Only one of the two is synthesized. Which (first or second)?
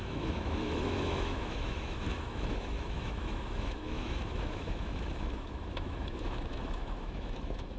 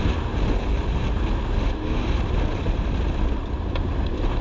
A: first